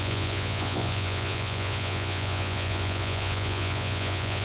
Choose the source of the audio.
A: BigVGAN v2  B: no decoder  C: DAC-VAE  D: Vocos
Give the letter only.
D